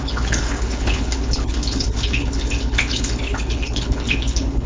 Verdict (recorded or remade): remade